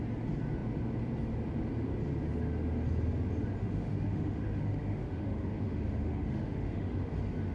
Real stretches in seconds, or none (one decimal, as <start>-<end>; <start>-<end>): 0.0-3.6; 7.1-7.5